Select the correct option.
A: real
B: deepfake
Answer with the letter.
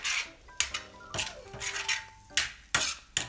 A